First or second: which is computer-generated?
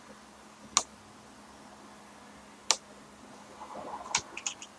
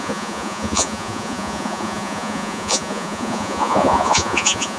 second